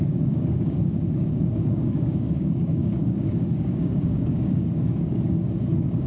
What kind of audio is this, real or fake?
fake